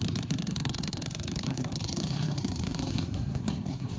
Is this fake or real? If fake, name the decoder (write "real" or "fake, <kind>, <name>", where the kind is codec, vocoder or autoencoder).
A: fake, codec, SNAC